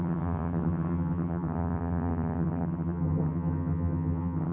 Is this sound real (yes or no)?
no